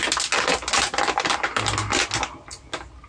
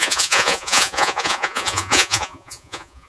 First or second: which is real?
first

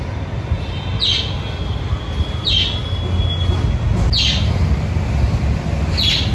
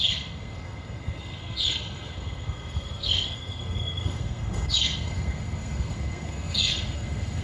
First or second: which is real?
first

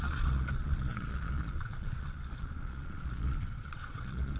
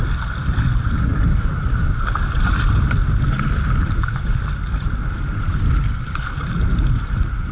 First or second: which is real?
second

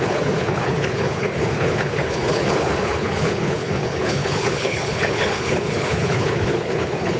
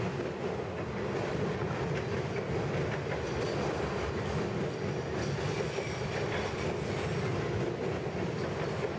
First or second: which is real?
second